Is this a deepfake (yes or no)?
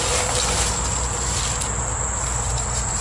no